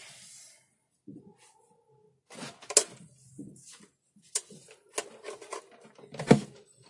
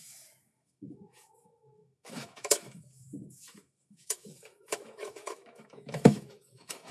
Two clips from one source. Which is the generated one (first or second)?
second